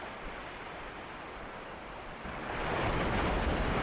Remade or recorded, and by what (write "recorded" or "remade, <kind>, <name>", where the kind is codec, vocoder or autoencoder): recorded